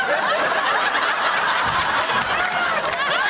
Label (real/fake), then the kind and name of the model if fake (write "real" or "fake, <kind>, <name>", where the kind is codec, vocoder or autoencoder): real